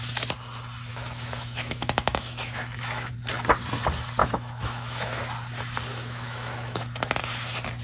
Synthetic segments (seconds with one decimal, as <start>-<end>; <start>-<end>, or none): 0.9-3.1; 4.2-5.2; 5.9-6.8